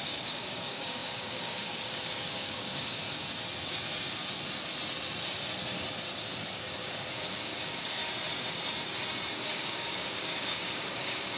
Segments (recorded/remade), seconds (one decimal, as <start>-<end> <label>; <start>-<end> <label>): 0.0-3.0 remade; 3.0-6.5 recorded; 6.5-8.0 remade; 8.0-9.3 recorded; 9.3-11.4 remade